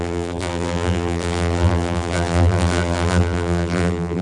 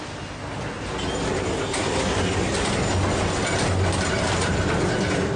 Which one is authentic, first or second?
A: second